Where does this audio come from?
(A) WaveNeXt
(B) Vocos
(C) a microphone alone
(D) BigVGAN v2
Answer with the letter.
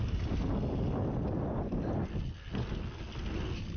C